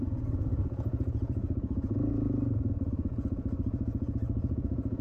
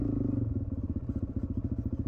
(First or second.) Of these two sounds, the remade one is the first